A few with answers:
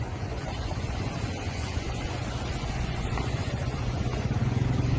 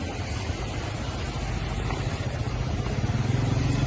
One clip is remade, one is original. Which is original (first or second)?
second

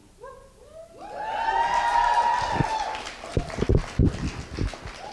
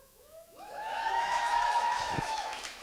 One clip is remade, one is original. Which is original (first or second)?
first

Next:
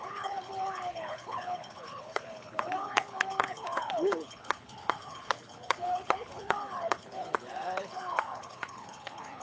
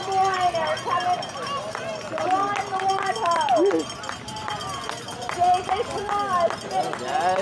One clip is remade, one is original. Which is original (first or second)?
second